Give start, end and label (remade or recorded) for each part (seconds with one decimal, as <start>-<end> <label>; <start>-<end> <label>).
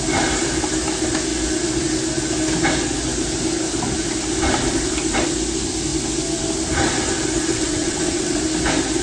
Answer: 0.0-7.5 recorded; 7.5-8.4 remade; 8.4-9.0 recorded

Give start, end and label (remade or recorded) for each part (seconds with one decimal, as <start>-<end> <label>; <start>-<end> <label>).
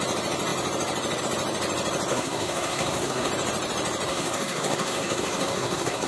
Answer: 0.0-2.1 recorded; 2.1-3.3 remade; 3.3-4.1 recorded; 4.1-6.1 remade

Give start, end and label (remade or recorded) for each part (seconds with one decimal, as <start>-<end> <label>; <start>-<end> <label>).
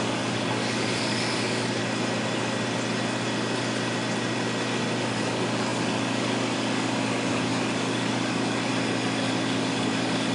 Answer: 0.0-1.8 remade; 1.8-5.0 recorded; 5.0-8.7 remade; 8.7-9.3 recorded; 9.3-10.3 remade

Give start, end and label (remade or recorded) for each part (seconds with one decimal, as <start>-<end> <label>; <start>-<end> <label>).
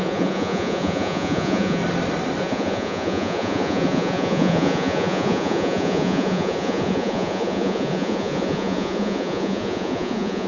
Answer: 0.0-1.8 remade; 1.8-2.4 recorded; 2.4-10.5 remade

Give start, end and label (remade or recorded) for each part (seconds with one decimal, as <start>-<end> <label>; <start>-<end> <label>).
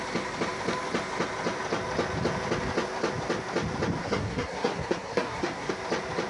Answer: 0.0-4.0 recorded; 4.0-5.7 remade; 5.7-6.3 recorded